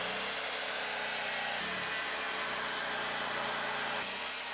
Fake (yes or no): no